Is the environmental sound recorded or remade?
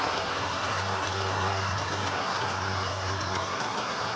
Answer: remade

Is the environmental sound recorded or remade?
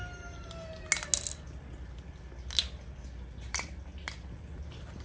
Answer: recorded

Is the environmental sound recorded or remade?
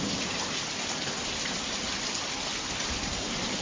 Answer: recorded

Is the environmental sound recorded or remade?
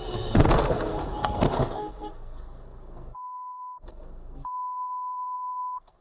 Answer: remade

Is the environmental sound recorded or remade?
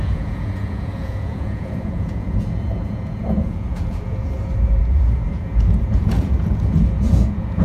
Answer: remade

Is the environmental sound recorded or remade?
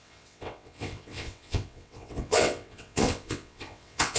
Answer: remade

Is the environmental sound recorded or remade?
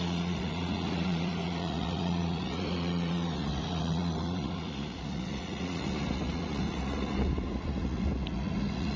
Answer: remade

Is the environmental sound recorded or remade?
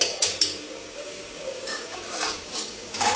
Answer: remade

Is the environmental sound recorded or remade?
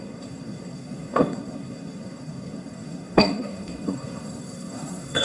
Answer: remade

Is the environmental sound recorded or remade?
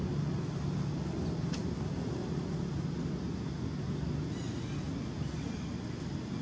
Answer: recorded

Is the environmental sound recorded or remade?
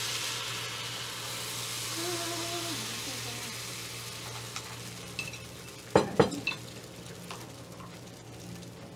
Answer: recorded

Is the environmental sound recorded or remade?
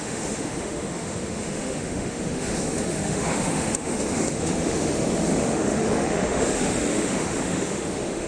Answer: remade